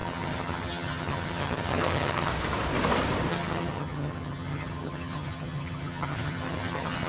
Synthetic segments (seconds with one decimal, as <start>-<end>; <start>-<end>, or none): 0.0-2.3; 3.3-7.1